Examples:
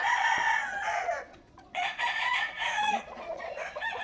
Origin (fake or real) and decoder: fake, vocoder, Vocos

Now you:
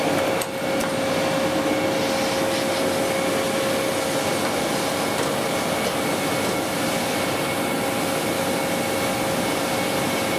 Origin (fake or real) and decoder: real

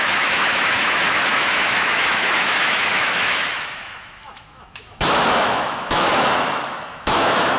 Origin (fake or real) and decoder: fake, autoencoder, DAC-VAE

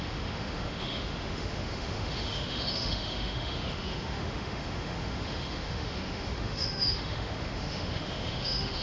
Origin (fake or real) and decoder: fake, autoencoder, DAC-VAE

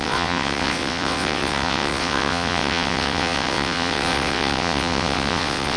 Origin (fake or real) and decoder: fake, vocoder, WaveNeXt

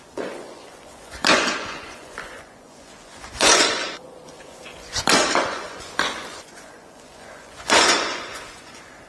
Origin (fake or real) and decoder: fake, vocoder, Vocos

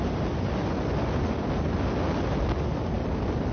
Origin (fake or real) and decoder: real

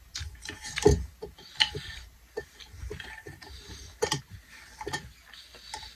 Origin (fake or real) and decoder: real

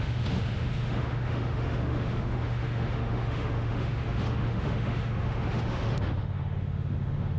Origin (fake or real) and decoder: fake, autoencoder, DAC-VAE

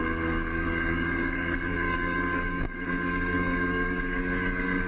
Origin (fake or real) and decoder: fake, codec, DAC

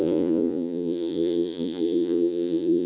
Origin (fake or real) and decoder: fake, vocoder, Vocos